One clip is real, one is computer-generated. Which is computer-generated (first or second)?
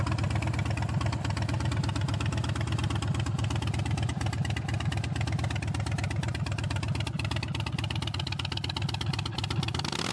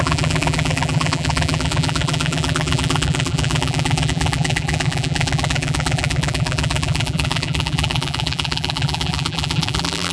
second